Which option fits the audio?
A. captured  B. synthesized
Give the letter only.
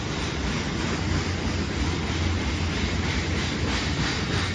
A